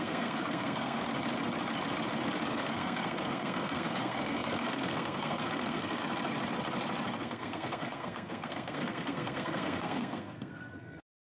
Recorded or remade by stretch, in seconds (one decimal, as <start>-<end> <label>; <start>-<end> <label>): 0.0-1.1 remade; 1.1-2.5 recorded; 2.5-6.0 remade; 6.0-7.2 recorded; 7.2-11.4 remade